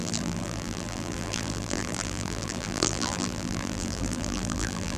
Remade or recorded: remade